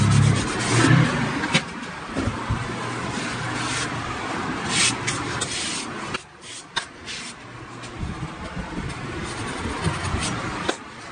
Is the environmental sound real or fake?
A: fake